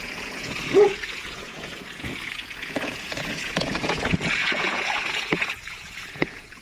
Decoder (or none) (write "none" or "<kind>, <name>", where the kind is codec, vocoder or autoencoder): vocoder, Vocos